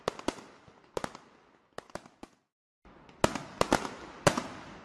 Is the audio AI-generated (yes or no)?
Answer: no